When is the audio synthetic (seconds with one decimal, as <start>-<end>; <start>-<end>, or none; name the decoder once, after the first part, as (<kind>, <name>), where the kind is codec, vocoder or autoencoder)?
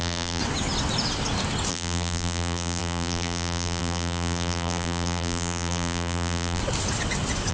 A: 0.0-0.4 (vocoder, BigVGAN v2); 1.7-6.6